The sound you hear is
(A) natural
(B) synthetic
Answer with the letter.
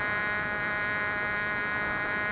A